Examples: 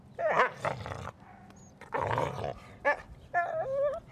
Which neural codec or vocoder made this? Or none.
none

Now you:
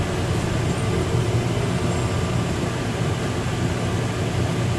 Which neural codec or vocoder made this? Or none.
none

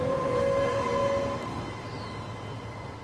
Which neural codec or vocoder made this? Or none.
none